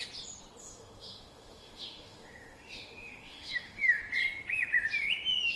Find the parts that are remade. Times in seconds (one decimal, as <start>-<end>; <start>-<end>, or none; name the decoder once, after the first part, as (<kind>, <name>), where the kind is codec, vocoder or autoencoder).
0.6-4.0 (autoencoder, DAC-VAE)